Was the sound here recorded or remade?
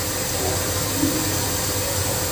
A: recorded